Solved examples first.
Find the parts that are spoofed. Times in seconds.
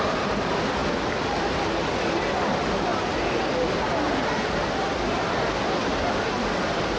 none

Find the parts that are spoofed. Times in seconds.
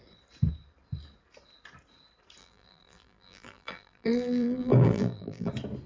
2.4-5.5 (vocoder, BigVGAN v2)